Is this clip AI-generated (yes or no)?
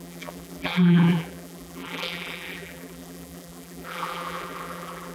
yes